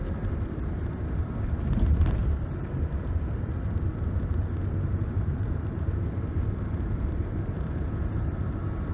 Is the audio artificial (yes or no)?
yes